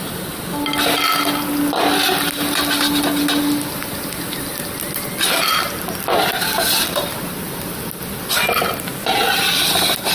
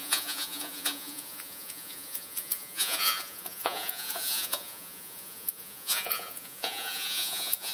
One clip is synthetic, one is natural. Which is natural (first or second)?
first